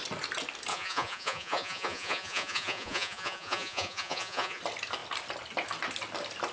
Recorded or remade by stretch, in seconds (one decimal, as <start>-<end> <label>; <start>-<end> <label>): 0.0-0.7 recorded; 0.7-4.6 remade; 4.6-6.5 recorded